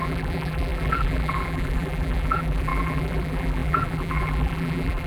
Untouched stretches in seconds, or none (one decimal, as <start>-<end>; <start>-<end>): none